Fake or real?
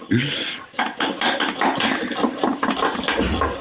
real